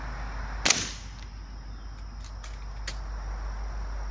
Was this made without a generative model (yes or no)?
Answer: yes